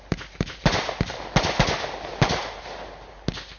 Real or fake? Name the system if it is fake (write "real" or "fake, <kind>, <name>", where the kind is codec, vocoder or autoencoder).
real